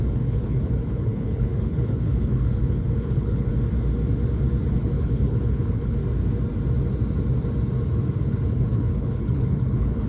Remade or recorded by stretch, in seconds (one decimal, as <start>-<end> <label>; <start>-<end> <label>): 0.0-3.5 remade; 3.5-4.7 recorded; 4.7-6.0 remade; 6.0-8.2 recorded; 8.2-10.1 remade